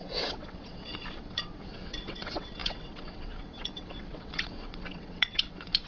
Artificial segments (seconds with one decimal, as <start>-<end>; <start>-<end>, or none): 0.0-5.9